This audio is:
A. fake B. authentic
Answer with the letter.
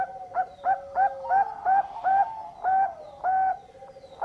B